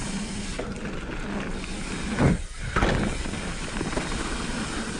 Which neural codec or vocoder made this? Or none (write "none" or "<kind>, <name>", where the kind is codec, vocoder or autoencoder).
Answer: none